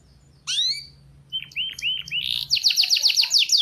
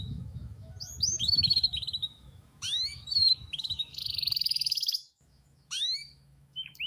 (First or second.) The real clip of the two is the first